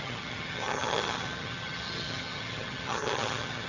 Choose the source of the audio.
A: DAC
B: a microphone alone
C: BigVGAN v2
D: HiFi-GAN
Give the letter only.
D